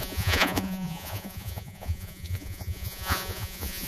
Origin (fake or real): fake